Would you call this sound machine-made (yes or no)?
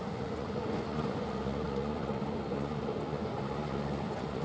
yes